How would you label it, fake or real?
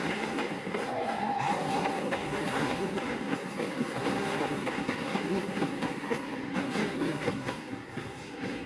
fake